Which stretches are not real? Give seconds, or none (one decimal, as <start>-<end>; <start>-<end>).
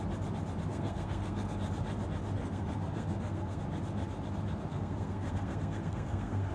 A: 0.7-1.6; 2.4-3.6; 4.7-6.5